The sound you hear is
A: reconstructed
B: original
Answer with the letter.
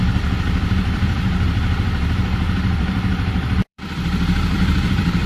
A